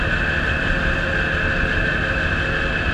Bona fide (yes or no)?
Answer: yes